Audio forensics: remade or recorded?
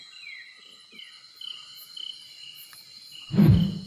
recorded